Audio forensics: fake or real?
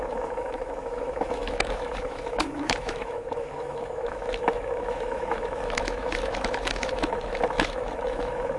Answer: fake